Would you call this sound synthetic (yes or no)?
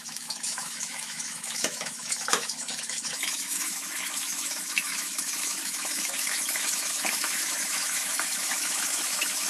yes